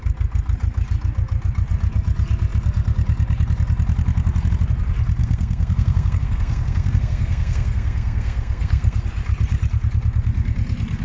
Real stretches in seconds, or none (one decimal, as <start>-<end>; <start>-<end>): 0.0-5.2; 9.0-11.0